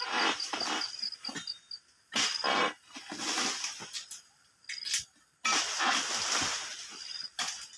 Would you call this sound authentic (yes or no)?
yes